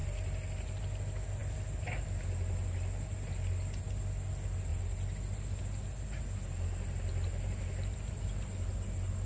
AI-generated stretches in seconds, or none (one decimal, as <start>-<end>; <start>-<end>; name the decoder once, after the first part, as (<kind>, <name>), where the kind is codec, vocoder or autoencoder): none

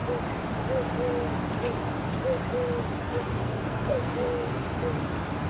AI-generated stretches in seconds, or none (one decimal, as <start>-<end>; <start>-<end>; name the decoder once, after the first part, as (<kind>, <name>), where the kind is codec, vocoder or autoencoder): 3.0-4.6 (codec, SNAC)

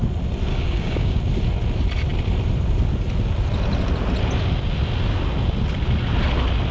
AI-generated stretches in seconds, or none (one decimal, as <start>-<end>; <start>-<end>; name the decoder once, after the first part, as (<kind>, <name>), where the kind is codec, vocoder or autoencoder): 0.5-1.2 (codec, DAC)

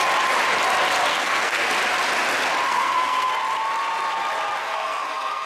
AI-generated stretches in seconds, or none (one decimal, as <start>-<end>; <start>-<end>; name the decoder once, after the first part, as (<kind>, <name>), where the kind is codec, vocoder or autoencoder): 1.1-1.7 (codec, SNAC); 2.7-3.3; 4.6-5.5